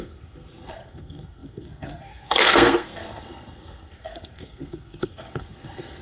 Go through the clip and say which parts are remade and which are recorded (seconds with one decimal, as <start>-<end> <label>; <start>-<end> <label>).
0.0-6.0 remade